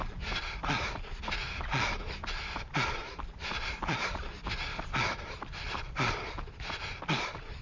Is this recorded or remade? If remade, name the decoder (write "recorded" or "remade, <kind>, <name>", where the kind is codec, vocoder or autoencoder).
remade, vocoder, BigVGAN v2